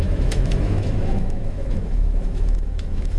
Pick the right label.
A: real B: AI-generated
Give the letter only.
B